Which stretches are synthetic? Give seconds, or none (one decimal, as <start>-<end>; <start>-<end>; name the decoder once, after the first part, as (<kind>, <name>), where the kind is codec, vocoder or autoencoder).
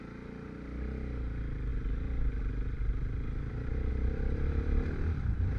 none